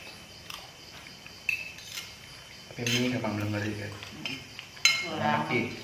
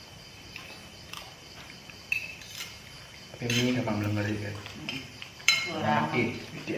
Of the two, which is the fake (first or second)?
second